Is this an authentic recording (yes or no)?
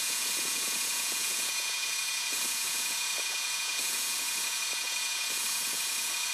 no